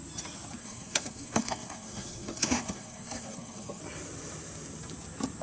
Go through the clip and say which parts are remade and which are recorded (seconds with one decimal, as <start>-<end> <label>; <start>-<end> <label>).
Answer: 0.0-0.6 recorded; 0.6-3.8 remade; 3.8-5.4 recorded